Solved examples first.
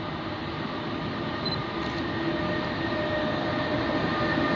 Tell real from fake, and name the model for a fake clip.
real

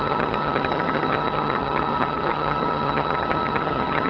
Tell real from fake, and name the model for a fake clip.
fake, vocoder, HiFi-GAN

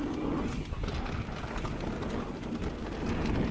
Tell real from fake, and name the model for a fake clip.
real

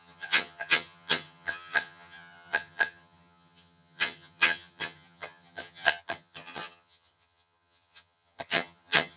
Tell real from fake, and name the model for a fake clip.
fake, vocoder, HiFi-GAN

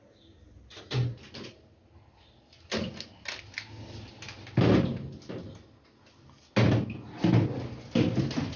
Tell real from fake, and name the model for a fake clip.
real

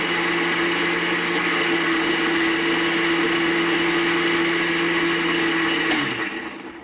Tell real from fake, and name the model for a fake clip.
real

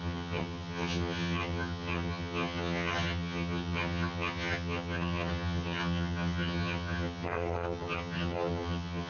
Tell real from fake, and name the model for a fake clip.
fake, vocoder, HiFi-GAN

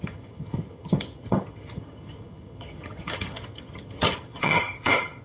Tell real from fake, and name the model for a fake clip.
fake, vocoder, HiFi-GAN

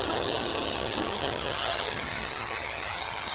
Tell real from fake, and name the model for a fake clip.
fake, vocoder, HiFi-GAN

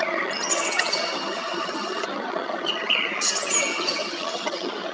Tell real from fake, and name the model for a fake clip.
fake, vocoder, HiFi-GAN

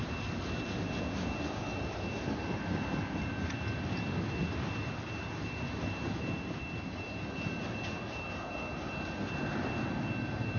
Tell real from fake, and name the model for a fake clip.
real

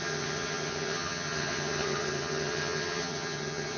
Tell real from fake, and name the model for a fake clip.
fake, vocoder, HiFi-GAN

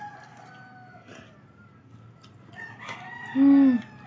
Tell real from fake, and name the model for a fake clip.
real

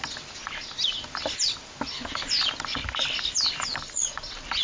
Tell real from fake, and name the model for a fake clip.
real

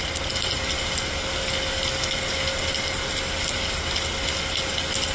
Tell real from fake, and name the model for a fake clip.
real